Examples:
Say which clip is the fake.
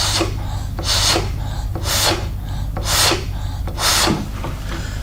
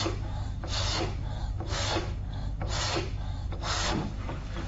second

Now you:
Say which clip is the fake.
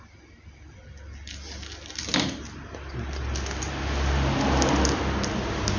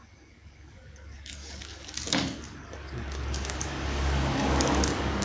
second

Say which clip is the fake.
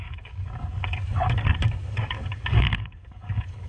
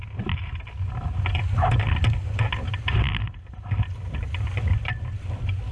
first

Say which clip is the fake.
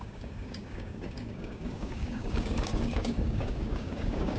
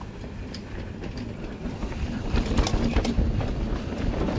first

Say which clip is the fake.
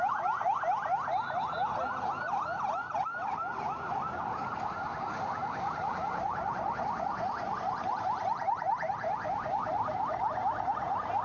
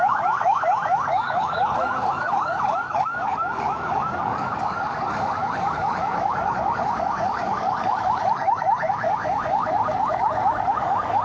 second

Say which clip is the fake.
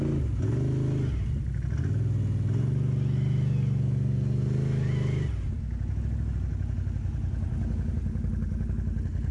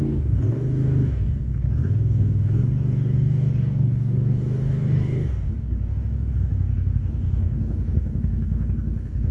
second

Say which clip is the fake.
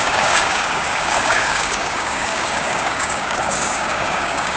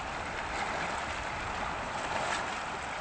first